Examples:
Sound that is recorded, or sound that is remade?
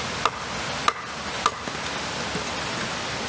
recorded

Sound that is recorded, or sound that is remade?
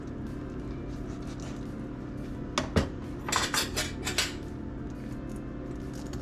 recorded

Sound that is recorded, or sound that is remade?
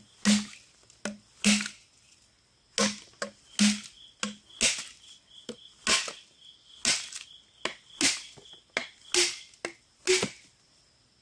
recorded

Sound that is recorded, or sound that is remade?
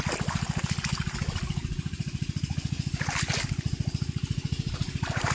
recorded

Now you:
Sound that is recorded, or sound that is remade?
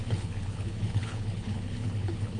remade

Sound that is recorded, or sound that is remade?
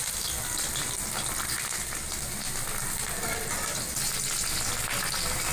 recorded